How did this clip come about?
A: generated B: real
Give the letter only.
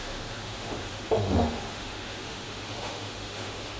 A